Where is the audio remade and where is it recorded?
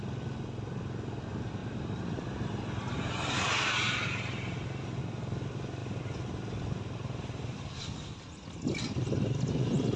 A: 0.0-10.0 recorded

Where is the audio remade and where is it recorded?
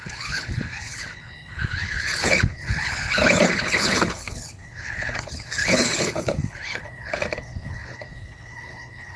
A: 0.0-9.2 remade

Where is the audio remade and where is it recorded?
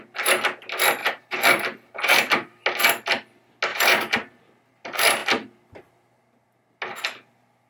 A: 0.0-1.0 recorded; 1.0-2.6 remade; 2.6-3.7 recorded; 3.7-4.4 remade; 4.4-7.7 recorded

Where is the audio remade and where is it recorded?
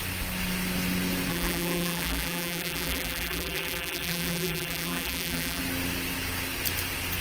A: 0.0-1.3 recorded; 1.3-5.6 remade; 5.6-7.2 recorded